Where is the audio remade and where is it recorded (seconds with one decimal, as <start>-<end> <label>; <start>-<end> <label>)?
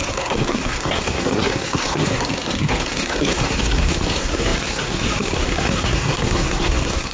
0.0-7.1 remade